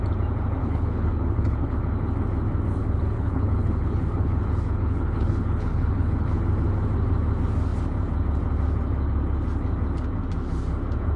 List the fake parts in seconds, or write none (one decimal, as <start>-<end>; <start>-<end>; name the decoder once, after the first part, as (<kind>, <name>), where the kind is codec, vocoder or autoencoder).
0.6-1.8 (codec, HILCodec); 2.8-6.4